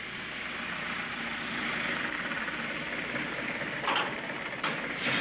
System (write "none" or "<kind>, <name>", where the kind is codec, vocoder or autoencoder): none